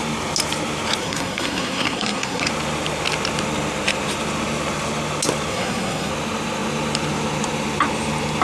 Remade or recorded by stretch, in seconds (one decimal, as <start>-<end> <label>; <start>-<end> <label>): 0.0-1.0 recorded; 1.0-2.5 remade; 2.5-5.5 recorded; 5.5-6.1 remade; 6.1-8.4 recorded